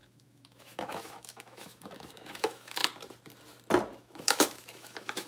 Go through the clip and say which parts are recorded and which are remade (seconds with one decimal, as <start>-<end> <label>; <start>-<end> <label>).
0.0-2.8 remade; 2.8-4.0 recorded; 4.0-5.3 remade